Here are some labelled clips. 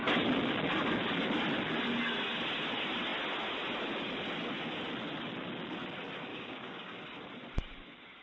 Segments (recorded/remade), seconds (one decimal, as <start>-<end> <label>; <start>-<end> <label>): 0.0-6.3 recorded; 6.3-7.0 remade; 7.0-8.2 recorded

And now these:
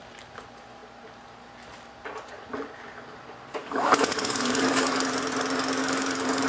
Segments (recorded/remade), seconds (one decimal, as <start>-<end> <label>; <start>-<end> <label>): 0.0-3.6 recorded; 3.6-5.1 remade; 5.1-5.8 recorded; 5.8-6.5 remade

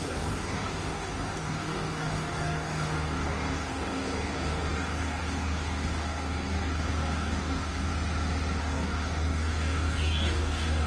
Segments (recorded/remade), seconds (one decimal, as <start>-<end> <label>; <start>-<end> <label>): 0.0-7.9 remade; 7.9-8.6 recorded; 8.6-10.9 remade

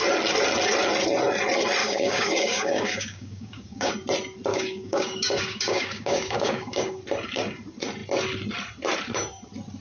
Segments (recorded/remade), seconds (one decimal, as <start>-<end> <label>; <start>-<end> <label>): 0.0-1.8 recorded; 1.8-3.9 remade; 3.9-4.5 recorded; 4.5-7.0 remade; 7.0-9.8 recorded